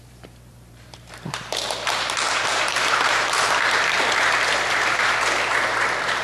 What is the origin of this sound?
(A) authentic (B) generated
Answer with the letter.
B